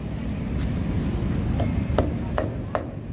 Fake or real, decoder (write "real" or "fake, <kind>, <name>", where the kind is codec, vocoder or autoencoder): real